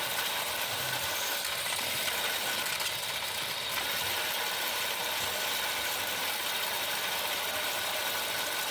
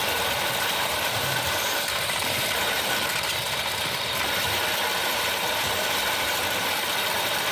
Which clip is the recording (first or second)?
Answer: first